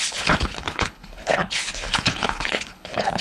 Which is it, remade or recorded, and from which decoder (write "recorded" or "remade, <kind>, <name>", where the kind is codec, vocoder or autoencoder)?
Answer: remade, codec, HILCodec